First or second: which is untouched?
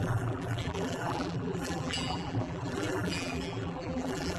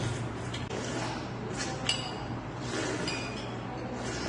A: second